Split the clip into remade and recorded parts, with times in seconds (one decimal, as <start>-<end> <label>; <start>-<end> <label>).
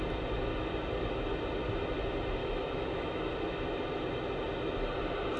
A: 0.0-2.4 recorded; 2.4-3.3 remade; 3.3-5.4 recorded